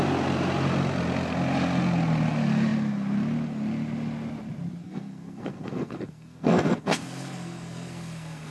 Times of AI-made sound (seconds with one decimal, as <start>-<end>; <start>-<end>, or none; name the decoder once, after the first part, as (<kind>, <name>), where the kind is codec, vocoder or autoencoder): 4.8-8.5 (codec, SNAC)